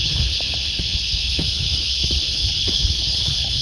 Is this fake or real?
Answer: fake